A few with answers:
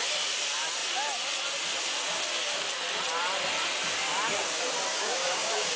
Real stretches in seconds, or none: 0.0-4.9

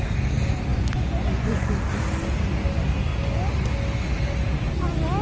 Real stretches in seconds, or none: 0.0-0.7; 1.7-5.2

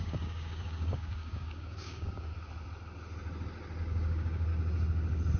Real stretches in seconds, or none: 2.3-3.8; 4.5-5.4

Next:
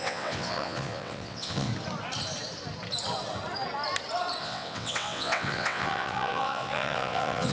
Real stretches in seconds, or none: 1.7-4.4

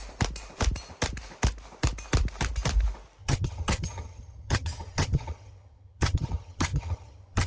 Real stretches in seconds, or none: 0.0-3.2

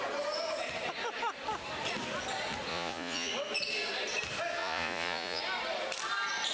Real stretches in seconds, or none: 0.0-2.7; 3.3-4.6; 5.4-6.5